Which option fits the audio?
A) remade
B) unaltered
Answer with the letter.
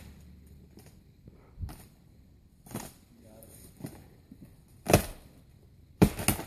B